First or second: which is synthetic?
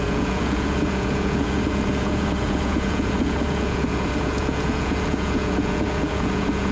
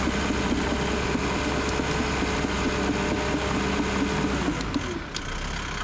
first